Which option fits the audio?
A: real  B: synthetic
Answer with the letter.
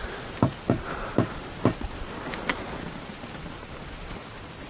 A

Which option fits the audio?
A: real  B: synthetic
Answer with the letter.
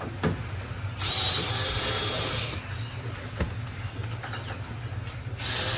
A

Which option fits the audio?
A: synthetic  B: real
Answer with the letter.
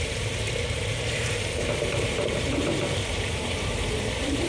A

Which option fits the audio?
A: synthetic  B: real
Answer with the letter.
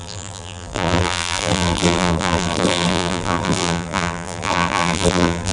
A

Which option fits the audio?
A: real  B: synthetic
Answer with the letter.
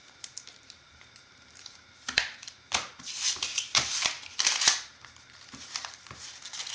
B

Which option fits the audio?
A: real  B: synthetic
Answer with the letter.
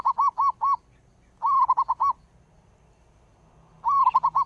A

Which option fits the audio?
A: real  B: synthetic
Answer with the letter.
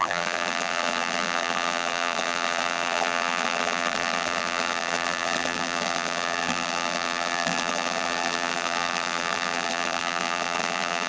B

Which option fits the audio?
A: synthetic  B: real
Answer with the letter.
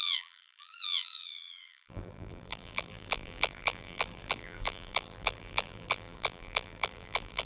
A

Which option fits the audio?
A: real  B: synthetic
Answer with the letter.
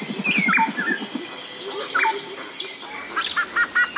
A